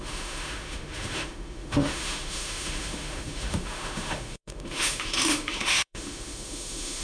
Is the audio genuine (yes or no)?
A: no